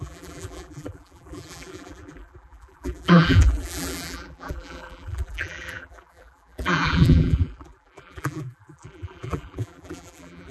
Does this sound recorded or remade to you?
remade